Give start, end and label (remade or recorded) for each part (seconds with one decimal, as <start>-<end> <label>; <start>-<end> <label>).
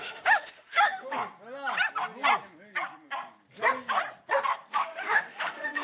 0.0-1.2 remade; 1.2-4.7 recorded; 4.7-5.8 remade